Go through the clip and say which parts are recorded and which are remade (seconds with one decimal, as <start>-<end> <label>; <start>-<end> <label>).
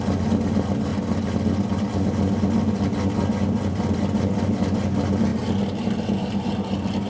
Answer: 0.0-5.3 recorded; 5.3-7.1 remade